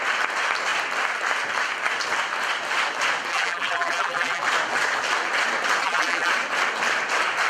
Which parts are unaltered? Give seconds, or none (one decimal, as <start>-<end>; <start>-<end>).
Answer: 0.0-3.3; 4.4-5.8; 6.3-7.5